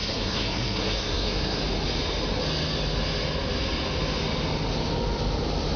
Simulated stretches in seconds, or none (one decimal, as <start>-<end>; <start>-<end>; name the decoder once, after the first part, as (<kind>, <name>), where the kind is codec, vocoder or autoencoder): 0.0-1.6 (codec, SNAC)